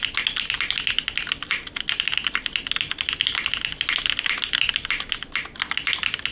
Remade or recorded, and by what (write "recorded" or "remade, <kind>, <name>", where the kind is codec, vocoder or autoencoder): recorded